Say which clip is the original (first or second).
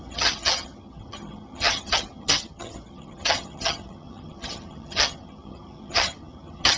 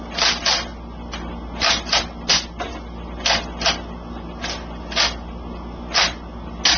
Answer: second